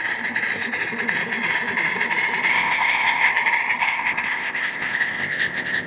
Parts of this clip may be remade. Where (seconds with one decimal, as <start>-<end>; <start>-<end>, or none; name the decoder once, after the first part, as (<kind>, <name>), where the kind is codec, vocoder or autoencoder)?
2.5-3.3 (codec, ZipCodec); 3.8-5.9